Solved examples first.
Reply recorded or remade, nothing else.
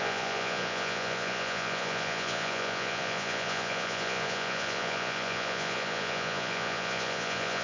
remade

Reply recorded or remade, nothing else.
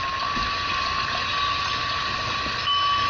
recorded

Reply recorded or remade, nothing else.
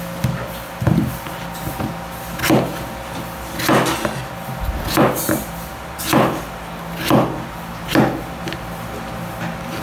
recorded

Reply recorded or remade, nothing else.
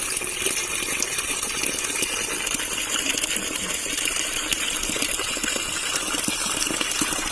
recorded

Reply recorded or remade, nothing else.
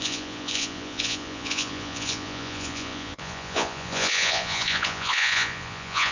remade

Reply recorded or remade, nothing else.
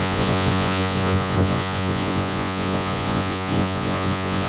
remade